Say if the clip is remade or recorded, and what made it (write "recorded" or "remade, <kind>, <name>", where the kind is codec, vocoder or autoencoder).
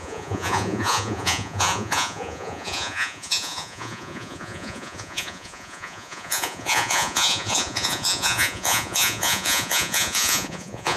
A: remade, vocoder, Vocos